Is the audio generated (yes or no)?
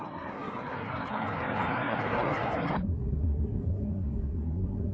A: yes